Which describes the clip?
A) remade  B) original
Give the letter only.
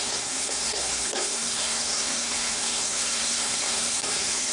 A